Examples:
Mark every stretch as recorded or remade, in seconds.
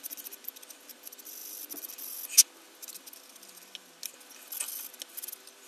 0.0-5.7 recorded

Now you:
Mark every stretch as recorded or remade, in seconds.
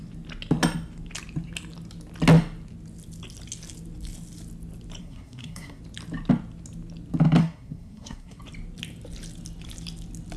0.0-5.0 recorded; 5.0-5.8 remade; 5.8-7.4 recorded; 7.4-8.4 remade; 8.4-10.4 recorded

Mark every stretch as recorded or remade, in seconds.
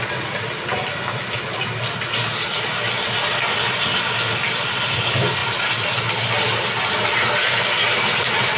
0.0-8.6 recorded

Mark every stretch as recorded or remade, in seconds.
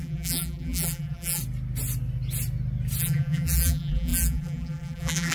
0.0-1.4 remade; 1.4-3.0 recorded; 3.0-5.3 remade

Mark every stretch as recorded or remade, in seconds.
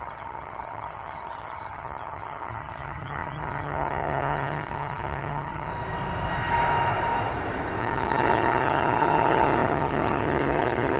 0.0-5.7 remade; 5.7-7.8 recorded; 7.8-11.0 remade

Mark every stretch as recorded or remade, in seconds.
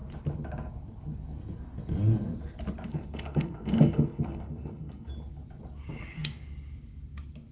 0.0-2.9 recorded; 2.9-5.1 remade; 5.1-7.5 recorded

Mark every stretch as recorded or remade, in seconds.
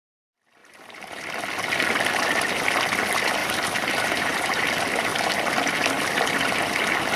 0.0-0.6 recorded; 0.6-1.2 remade; 1.2-3.4 recorded; 3.4-4.6 remade; 4.6-7.2 recorded